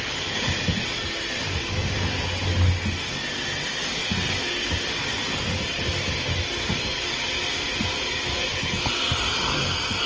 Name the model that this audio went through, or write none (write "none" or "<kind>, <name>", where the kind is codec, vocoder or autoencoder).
none